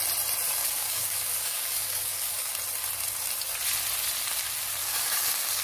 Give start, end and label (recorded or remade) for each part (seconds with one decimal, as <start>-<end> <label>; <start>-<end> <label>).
0.0-0.6 recorded; 0.6-2.5 remade; 2.5-4.8 recorded; 4.8-5.6 remade

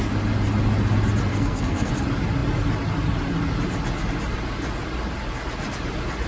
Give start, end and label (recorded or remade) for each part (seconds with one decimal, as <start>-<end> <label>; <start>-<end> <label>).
0.0-1.3 recorded; 1.3-1.9 remade; 1.9-6.3 recorded

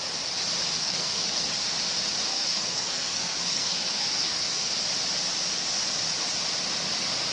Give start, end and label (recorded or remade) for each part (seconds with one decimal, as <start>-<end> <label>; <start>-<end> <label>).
0.0-0.8 recorded; 0.8-1.5 remade; 1.5-2.3 recorded; 2.3-4.7 remade; 4.7-7.3 recorded

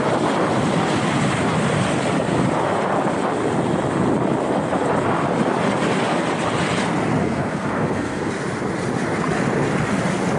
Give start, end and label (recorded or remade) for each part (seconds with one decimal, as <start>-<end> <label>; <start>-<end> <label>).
0.0-7.2 recorded; 7.2-8.3 remade; 8.3-10.4 recorded

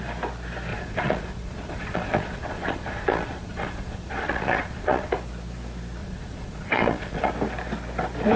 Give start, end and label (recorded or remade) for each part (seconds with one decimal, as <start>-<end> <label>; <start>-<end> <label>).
0.0-0.7 recorded; 0.7-5.1 remade; 5.1-6.0 recorded; 6.0-7.3 remade; 7.3-8.4 recorded

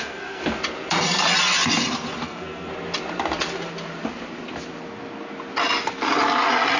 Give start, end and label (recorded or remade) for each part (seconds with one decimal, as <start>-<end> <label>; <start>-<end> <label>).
0.0-0.4 remade; 0.4-2.2 recorded; 2.2-2.7 remade; 2.7-6.8 recorded